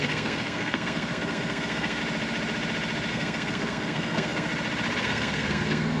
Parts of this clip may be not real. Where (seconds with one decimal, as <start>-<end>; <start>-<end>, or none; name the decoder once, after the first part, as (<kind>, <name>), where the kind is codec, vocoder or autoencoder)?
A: 0.0-2.0 (codec, SNAC); 3.1-4.5; 5.0-6.0